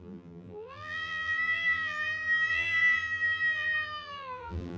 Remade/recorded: remade